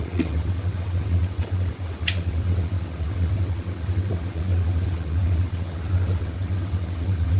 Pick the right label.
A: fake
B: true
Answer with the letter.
A